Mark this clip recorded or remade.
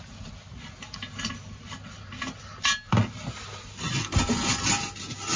recorded